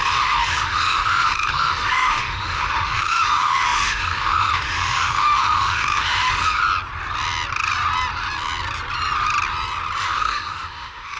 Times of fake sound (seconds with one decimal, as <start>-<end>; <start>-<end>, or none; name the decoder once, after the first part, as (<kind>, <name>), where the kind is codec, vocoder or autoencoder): 0.0-6.6 (autoencoder, DAC-VAE); 10.0-11.2